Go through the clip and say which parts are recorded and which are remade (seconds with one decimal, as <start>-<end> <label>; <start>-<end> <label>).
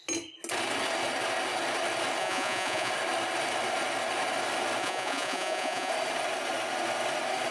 0.0-2.2 recorded; 2.2-2.9 remade; 2.9-4.8 recorded; 4.8-5.9 remade; 5.9-7.5 recorded